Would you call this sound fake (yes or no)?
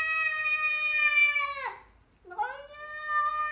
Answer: no